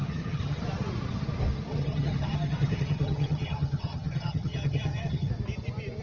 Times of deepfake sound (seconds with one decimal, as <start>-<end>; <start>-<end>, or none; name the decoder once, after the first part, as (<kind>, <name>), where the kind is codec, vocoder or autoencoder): 0.0-0.6 (vocoder, HiFi-GAN); 1.7-5.3